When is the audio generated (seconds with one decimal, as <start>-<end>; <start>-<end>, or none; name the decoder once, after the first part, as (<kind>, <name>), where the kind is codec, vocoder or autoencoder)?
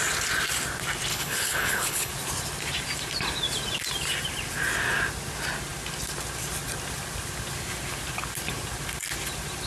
1.1-2.1 (codec, HILCodec)